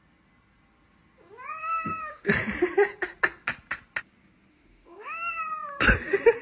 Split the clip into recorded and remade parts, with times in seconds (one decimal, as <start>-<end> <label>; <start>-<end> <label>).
0.0-1.6 recorded; 1.6-2.3 remade; 2.3-4.5 recorded; 4.5-5.4 remade; 5.4-6.4 recorded